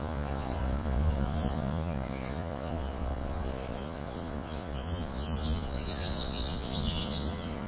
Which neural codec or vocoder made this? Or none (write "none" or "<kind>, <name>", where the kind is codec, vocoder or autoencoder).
vocoder, Vocos